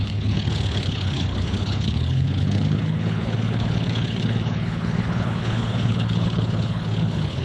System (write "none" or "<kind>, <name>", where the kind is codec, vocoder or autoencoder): codec, HILCodec